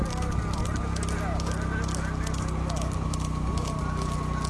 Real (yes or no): yes